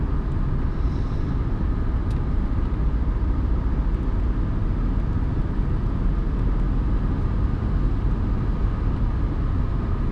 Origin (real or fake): real